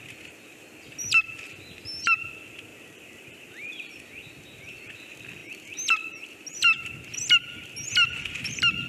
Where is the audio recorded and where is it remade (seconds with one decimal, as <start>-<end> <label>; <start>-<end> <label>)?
0.0-8.9 recorded